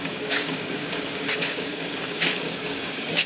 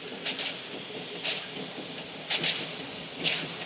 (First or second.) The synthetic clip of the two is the first